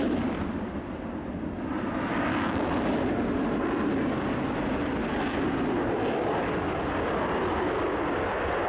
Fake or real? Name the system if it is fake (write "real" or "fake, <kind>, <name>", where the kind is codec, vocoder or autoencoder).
real